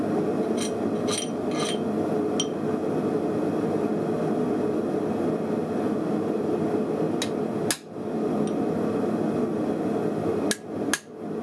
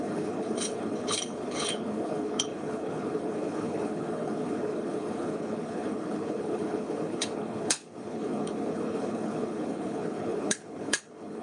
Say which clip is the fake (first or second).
second